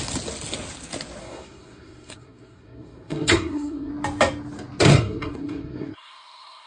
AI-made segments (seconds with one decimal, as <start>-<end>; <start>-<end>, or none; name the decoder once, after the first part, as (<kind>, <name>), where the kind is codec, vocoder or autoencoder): 1.2-3.9 (codec, SNAC); 4.9-6.7